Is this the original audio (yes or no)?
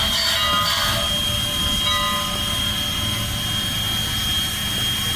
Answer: yes